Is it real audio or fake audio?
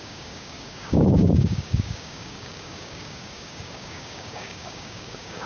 fake